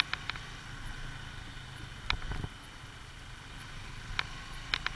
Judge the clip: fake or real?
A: real